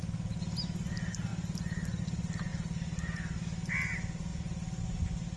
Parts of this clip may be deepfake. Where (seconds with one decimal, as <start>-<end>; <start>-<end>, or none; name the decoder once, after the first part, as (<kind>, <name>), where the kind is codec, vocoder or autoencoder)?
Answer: none